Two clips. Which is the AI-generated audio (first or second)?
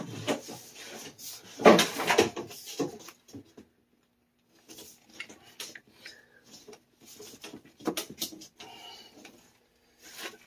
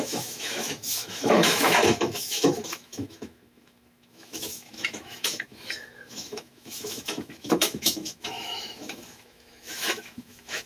second